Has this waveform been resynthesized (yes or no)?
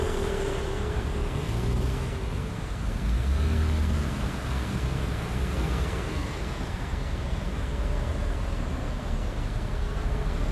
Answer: yes